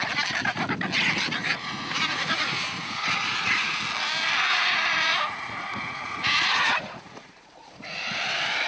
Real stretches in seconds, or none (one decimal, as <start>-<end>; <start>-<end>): 0.0-1.4; 3.8-4.5; 8.2-8.7

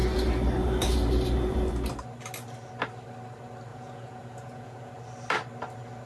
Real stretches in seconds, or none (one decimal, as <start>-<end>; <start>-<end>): 0.0-3.7; 4.9-6.1

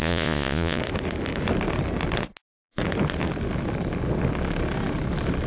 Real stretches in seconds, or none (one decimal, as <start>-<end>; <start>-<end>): 0.8-5.5

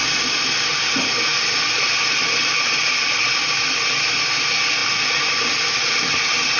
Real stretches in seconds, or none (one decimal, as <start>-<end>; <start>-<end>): 0.0-6.6

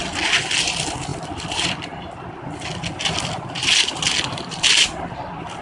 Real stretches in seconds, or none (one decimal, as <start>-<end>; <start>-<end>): 0.0-5.6